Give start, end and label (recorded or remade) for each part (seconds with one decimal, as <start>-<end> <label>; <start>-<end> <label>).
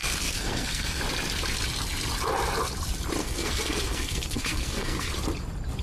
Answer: 0.0-1.0 remade; 1.0-3.2 recorded; 3.2-5.1 remade; 5.1-5.8 recorded